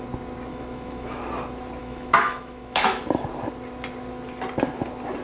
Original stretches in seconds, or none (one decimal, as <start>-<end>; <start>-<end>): 0.0-0.5; 1.2-1.8; 3.0-5.2